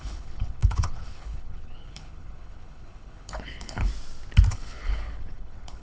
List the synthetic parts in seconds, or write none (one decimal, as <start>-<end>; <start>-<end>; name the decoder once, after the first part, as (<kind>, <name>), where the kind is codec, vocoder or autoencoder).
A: 0.0-3.9 (codec, HILCodec); 4.5-5.8

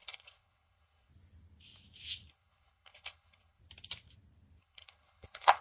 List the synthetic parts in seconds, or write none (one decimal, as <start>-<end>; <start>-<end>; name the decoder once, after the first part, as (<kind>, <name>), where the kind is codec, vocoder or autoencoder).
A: 0.0-1.1 (codec, HILCodec); 2.3-3.6; 4.6-5.6

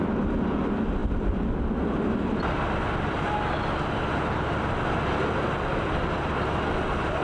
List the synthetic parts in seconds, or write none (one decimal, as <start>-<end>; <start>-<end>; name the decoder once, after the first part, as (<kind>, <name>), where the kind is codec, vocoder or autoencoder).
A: none

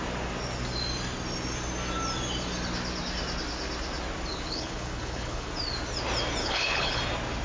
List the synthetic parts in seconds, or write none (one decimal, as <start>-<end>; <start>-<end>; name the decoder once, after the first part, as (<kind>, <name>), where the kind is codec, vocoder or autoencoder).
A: 4.3-5.5 (codec, HILCodec); 6.4-7.0

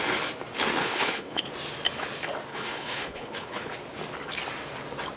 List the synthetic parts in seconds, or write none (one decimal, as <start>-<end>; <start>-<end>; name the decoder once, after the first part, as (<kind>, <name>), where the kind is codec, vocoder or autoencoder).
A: 0.8-1.5 (codec, HILCodec); 2.5-3.7

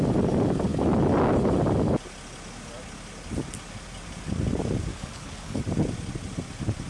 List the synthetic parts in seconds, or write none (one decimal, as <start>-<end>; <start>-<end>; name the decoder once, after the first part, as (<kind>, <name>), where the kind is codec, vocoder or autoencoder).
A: 4.9-5.6 (codec, HILCodec)